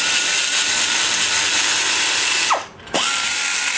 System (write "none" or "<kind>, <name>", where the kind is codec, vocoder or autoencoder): none